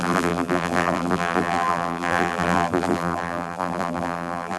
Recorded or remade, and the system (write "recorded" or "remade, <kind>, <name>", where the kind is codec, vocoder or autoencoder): remade, vocoder, BigVGAN v2